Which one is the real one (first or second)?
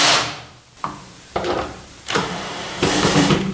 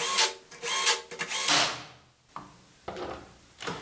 second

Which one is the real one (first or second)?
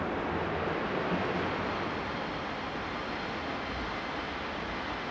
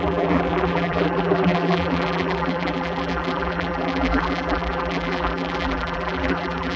first